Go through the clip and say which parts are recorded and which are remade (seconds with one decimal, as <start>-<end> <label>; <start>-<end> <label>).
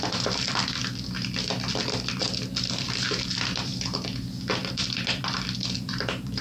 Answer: 0.0-0.8 remade; 0.8-2.6 recorded; 2.6-3.7 remade; 3.7-4.7 recorded; 4.7-6.4 remade